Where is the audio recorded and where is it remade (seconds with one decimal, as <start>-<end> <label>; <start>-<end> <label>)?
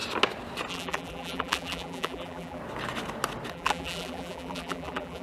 0.0-0.7 recorded; 0.7-2.6 remade; 2.6-3.5 recorded; 3.5-5.2 remade